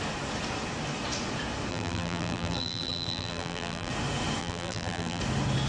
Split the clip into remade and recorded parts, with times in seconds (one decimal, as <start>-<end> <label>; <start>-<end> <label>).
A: 0.0-1.7 recorded; 1.7-3.9 remade; 3.9-4.4 recorded; 4.4-5.2 remade; 5.2-5.7 recorded